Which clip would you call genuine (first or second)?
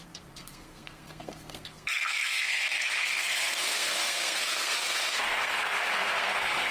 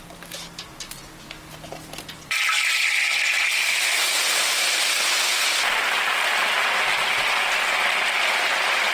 second